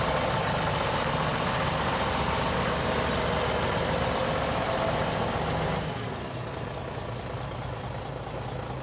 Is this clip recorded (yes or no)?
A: yes